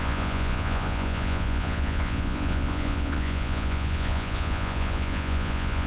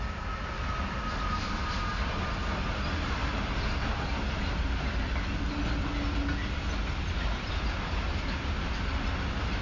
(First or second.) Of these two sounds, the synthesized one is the first